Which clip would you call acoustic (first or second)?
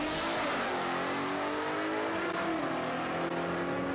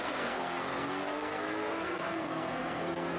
first